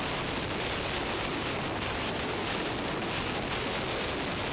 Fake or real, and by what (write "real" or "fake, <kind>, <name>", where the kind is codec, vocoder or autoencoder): real